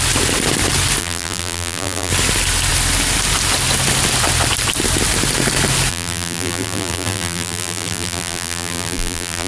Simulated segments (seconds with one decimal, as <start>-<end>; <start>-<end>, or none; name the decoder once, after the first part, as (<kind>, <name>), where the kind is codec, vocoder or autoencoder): 1.0-2.1 (vocoder, BigVGAN v2); 5.9-9.5